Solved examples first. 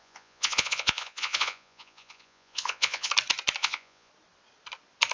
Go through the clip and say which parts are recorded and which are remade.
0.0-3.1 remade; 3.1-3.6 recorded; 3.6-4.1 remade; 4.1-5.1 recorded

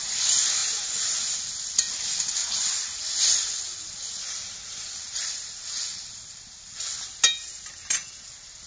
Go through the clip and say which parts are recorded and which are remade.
0.0-8.7 recorded

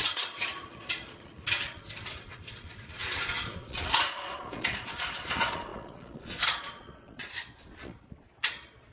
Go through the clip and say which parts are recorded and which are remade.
0.0-8.9 remade

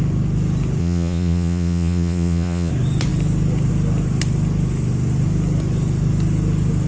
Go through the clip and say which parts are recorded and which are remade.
0.0-0.8 recorded; 0.8-2.7 remade; 2.7-6.9 recorded

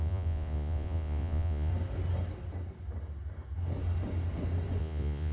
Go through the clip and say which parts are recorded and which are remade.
0.0-1.7 remade; 1.7-4.8 recorded; 4.8-5.3 remade

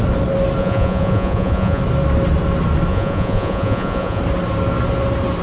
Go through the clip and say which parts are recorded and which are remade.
0.0-0.6 recorded; 0.6-1.8 remade; 1.8-2.9 recorded; 2.9-4.2 remade; 4.2-5.4 recorded